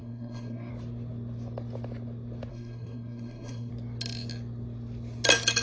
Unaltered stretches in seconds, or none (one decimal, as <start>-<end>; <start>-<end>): 0.7-2.5; 3.7-5.6